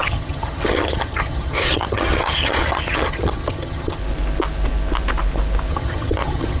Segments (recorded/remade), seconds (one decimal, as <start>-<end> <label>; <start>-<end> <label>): 0.0-4.0 remade; 4.0-5.7 recorded; 5.7-6.6 remade